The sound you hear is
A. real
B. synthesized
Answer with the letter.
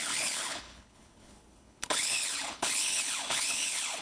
B